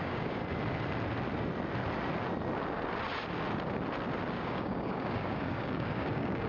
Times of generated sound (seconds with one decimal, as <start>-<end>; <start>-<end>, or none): 0.0-0.4; 4.3-6.5